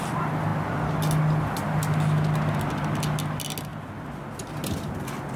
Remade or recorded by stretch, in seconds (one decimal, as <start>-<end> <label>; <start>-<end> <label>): 0.0-5.4 recorded